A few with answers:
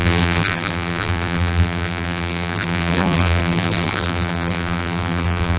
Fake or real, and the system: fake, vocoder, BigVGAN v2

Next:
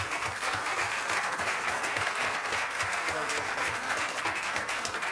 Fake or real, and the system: fake, codec, SNAC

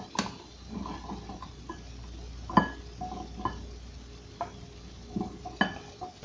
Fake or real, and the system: real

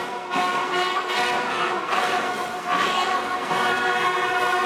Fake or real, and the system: fake, codec, SNAC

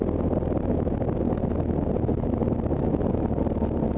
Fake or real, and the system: real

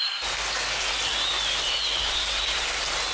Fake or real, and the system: real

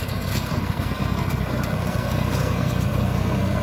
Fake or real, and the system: fake, codec, SNAC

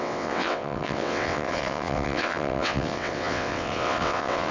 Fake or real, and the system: fake, vocoder, WaveNeXt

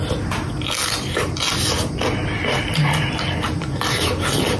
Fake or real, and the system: real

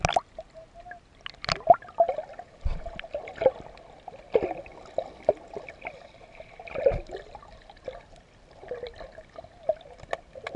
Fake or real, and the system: real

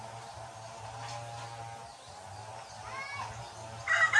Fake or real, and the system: real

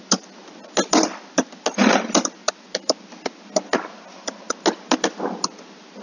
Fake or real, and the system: real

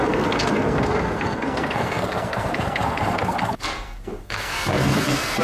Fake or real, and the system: fake, codec, SNAC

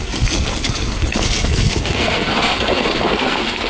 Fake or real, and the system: fake, codec, SNAC